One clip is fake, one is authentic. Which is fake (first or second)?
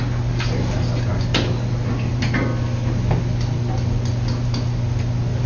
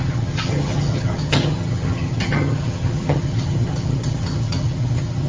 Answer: second